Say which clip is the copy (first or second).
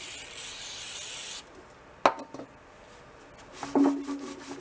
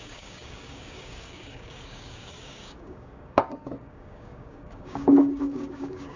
second